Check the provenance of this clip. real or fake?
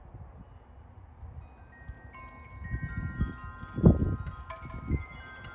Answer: real